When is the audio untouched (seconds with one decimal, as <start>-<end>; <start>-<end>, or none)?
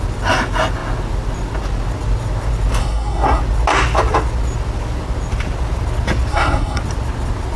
0.0-2.8; 3.4-6.3; 6.8-7.6